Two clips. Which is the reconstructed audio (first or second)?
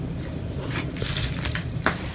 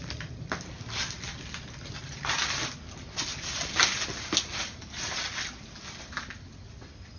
first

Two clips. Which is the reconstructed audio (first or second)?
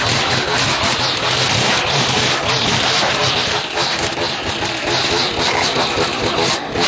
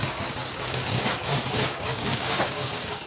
second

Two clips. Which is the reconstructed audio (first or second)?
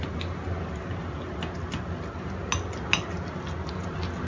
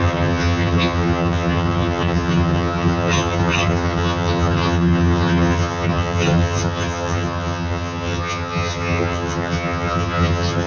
second